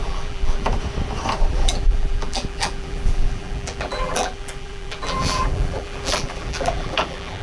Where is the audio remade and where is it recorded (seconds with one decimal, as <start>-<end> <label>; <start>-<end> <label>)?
0.0-0.7 remade; 0.7-1.5 recorded; 1.5-7.4 remade